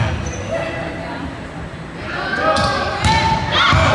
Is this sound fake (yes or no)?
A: no